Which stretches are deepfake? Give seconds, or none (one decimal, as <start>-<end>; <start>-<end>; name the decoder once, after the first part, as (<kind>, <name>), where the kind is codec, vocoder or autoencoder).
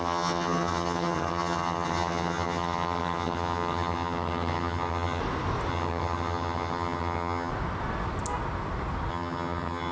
0.0-5.2 (vocoder, HiFi-GAN); 5.7-7.5; 9.1-9.9